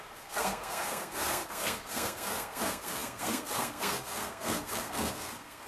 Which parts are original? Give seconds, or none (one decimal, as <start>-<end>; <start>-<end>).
none